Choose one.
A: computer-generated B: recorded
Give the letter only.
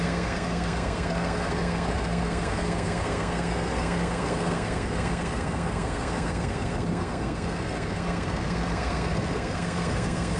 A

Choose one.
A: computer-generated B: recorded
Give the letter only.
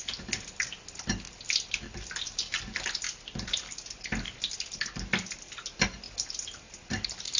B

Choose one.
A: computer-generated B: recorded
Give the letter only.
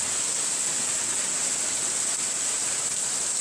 B